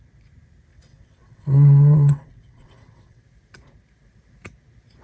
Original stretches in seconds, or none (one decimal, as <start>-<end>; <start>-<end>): 0.0-0.7; 3.2-5.0